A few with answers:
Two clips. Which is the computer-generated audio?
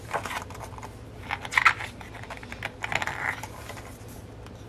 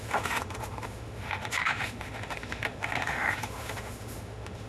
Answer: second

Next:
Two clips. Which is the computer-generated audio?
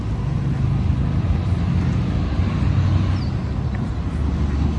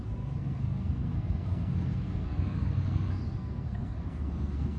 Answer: second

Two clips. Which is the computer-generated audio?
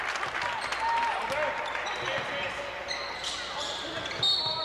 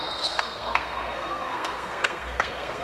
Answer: second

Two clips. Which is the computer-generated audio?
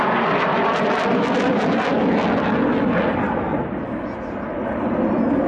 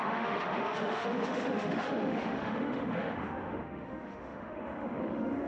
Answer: second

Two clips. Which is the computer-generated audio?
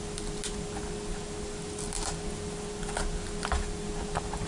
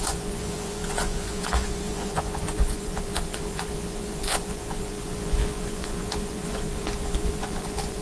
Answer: second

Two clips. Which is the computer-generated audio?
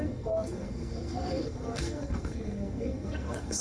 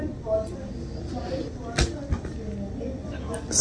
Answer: first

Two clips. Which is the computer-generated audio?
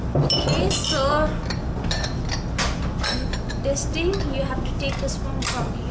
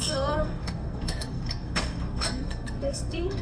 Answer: second